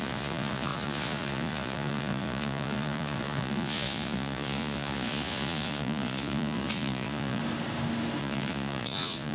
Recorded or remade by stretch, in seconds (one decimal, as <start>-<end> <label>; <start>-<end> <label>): 0.0-7.4 remade; 7.4-8.2 recorded; 8.2-9.3 remade

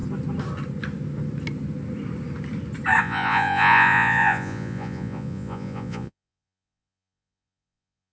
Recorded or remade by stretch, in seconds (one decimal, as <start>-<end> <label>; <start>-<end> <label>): 0.0-3.0 recorded; 3.0-8.1 remade

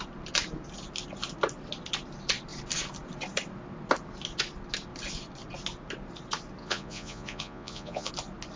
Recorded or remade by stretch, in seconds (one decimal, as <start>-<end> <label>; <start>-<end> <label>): 0.0-6.6 recorded; 6.6-8.1 remade; 8.1-8.6 recorded